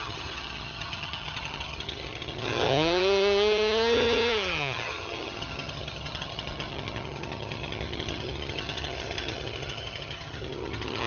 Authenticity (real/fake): fake